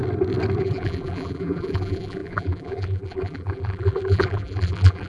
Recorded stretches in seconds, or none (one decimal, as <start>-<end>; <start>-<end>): 0.0-0.6